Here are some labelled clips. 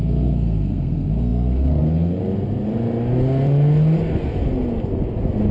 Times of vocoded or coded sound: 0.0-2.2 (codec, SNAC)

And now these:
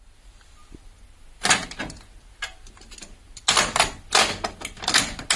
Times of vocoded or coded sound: none

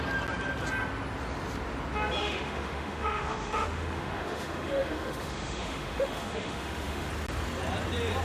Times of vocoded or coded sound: 2.2-7.1 (autoencoder, DAC-VAE)